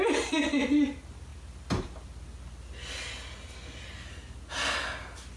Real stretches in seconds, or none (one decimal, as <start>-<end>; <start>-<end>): 0.0-5.4